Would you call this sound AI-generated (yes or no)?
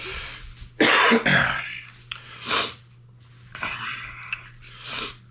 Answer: no